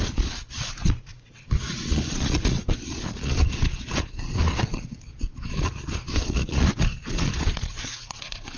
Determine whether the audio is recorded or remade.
remade